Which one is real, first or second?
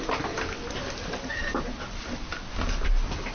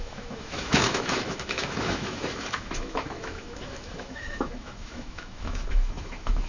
first